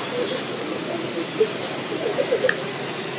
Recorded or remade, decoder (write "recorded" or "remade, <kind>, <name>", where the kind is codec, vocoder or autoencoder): recorded